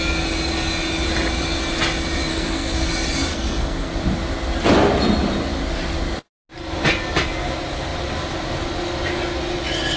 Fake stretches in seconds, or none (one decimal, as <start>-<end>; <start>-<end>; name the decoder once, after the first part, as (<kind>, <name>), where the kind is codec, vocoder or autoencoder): 2.3-2.9 (codec, SNAC); 3.3-3.9